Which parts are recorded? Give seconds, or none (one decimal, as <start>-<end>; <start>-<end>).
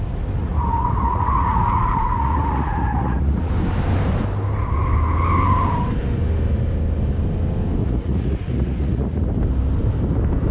0.0-0.4; 3.5-7.8; 9.3-10.5